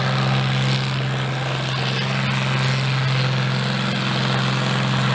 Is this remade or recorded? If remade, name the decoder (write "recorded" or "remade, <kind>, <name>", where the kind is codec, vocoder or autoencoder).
recorded